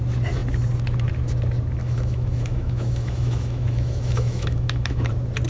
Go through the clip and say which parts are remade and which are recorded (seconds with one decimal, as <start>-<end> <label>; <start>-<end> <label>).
0.0-1.8 recorded; 1.8-5.1 remade; 5.1-5.5 recorded

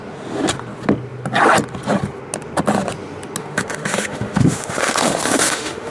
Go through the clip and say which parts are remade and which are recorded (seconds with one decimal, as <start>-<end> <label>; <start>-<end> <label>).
0.0-3.4 recorded; 3.4-5.9 remade

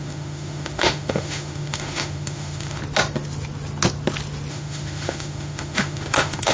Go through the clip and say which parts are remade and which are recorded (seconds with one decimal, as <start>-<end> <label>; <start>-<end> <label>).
0.0-2.8 remade; 2.8-4.5 recorded; 4.5-6.5 remade

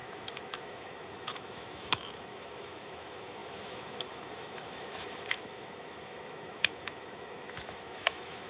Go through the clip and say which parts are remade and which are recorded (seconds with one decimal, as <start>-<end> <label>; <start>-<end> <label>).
0.0-8.5 remade

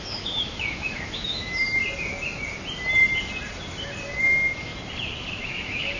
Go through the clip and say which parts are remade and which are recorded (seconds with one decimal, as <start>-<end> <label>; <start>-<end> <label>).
0.0-1.8 remade; 1.8-4.2 recorded; 4.2-4.7 remade; 4.7-5.3 recorded; 5.3-6.0 remade

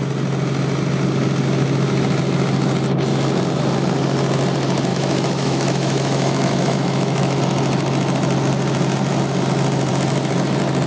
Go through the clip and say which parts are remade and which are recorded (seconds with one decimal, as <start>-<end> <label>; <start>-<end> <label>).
0.0-4.9 recorded; 4.9-7.4 remade; 7.4-10.9 recorded

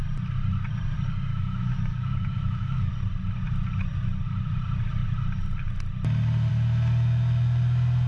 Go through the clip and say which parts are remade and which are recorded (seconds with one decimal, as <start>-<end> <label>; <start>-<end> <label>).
0.0-1.3 recorded; 1.3-2.9 remade; 2.9-8.1 recorded

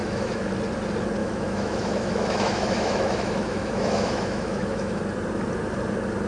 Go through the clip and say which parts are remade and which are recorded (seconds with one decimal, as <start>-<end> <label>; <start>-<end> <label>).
0.0-0.5 remade; 0.5-1.2 recorded; 1.2-5.0 remade; 5.0-6.3 recorded